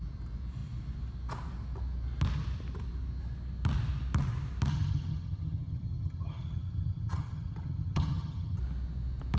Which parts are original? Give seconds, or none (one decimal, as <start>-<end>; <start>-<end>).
0.0-4.7; 8.6-9.4